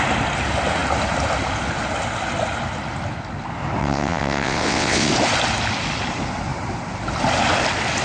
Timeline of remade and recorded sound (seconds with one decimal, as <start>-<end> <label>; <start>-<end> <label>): 0.0-3.8 recorded; 3.8-5.1 remade; 5.1-8.0 recorded